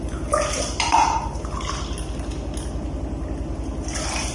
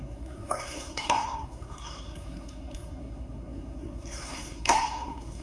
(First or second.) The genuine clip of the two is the first